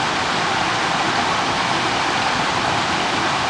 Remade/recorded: recorded